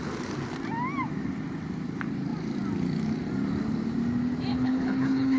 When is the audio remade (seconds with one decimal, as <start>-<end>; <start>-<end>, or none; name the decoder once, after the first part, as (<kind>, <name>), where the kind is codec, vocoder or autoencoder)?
4.5-5.4 (codec, HILCodec)